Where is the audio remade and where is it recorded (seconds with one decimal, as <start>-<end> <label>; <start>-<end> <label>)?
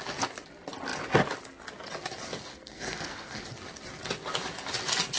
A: 0.0-2.5 recorded; 2.5-3.4 remade; 3.4-5.2 recorded